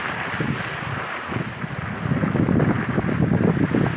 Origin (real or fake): real